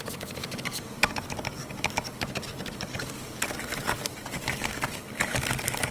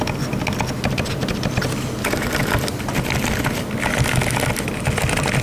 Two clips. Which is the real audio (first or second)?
second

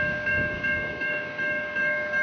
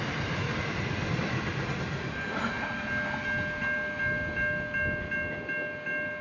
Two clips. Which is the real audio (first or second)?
second